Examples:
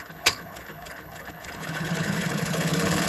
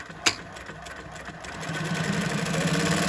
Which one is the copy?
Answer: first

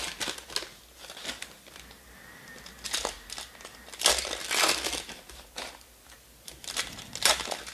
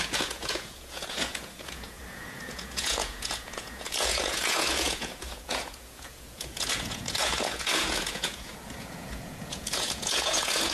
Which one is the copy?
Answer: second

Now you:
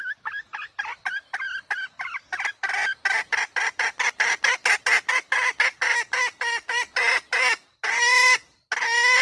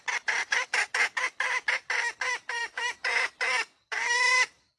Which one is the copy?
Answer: second